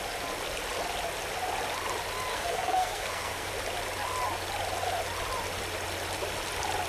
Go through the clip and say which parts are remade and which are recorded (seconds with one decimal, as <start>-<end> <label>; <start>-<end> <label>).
0.0-2.3 recorded; 2.3-3.5 remade; 3.5-6.9 recorded